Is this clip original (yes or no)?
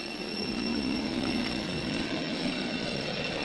no